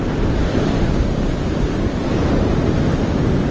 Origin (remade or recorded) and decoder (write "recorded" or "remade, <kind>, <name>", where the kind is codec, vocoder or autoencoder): recorded